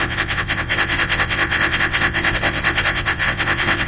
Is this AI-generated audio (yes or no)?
yes